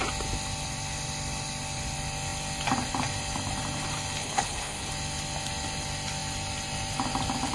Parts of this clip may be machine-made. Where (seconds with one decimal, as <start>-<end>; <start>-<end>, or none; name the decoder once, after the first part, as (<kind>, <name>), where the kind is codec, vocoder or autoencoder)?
4.2-4.9 (codec, HILCodec)